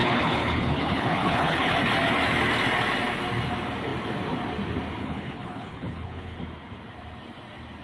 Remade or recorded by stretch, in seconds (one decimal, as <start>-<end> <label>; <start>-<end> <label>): 0.0-1.7 remade; 1.7-5.0 recorded; 5.0-6.4 remade; 6.4-7.8 recorded